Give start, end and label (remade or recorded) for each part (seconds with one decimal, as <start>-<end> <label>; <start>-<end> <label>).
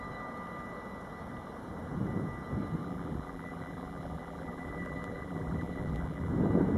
0.0-2.8 recorded; 2.8-6.3 remade; 6.3-6.8 recorded